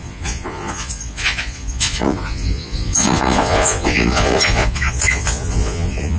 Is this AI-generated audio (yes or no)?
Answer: yes